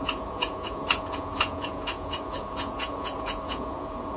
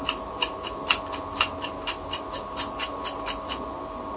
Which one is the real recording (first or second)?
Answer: second